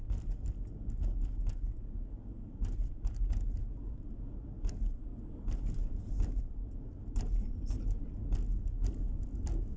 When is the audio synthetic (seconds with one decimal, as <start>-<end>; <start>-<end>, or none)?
none